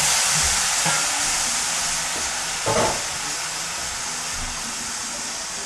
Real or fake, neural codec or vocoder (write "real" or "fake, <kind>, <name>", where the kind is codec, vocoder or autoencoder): real